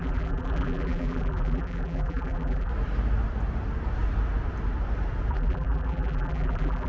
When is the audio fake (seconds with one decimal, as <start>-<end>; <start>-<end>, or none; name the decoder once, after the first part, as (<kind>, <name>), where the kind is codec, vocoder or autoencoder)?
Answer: 0.0-2.7 (vocoder, BigVGAN v2); 5.3-6.9